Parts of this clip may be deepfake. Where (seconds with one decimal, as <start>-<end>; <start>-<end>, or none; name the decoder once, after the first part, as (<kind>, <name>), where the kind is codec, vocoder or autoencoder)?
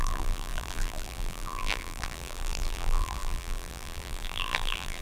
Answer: 0.0-5.0 (vocoder, BigVGAN v2)